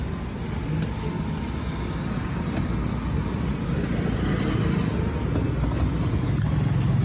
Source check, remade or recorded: recorded